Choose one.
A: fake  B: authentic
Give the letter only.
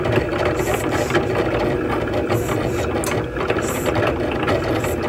B